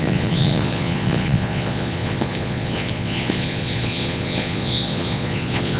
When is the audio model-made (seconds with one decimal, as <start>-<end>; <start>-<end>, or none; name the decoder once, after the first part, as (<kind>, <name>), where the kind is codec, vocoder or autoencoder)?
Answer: 0.0-5.8 (vocoder, Vocos)